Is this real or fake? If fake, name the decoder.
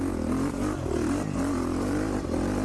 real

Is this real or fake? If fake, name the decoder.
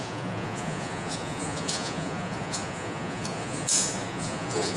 fake, vocoder, Vocos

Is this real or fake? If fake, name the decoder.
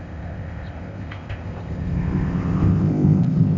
fake, codec, ZipCodec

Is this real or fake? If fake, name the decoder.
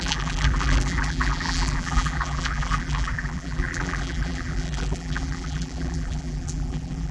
fake, vocoder, BigVGAN v2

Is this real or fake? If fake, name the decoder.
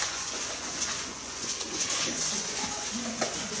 fake, vocoder, Vocos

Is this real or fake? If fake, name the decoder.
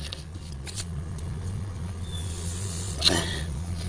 fake, vocoder, Vocos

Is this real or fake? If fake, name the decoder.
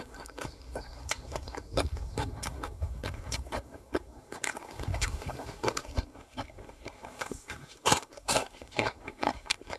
fake, codec, SNAC